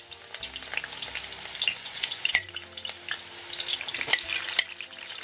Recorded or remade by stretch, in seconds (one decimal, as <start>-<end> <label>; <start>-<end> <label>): 0.0-1.7 recorded; 1.7-2.5 remade; 2.5-5.2 recorded